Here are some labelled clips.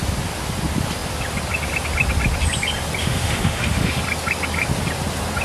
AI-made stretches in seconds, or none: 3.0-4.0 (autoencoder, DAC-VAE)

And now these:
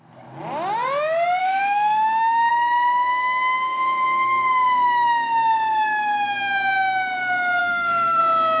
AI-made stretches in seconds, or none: 1.4-2.5 (autoencoder, DAC-VAE); 7.6-8.2

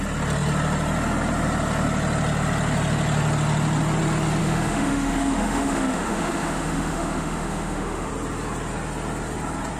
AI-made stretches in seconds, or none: 4.4-8.1 (autoencoder, DAC-VAE)

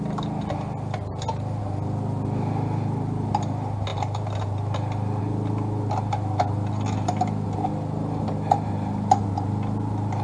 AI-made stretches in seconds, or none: none

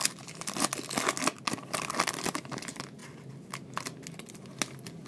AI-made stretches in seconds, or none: none

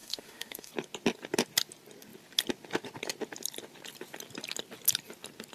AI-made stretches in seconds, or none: 0.0-0.7 (autoencoder, DAC-VAE)